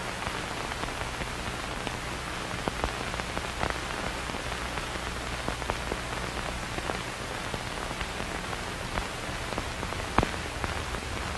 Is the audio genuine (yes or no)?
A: yes